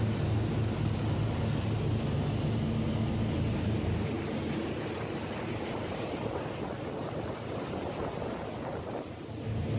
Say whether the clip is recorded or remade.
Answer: recorded